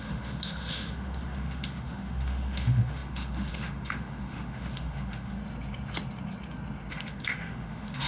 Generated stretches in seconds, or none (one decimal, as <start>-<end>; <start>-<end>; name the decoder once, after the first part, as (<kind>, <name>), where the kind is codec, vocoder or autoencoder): 0.0-5.4 (autoencoder, DAC-VAE); 6.9-8.1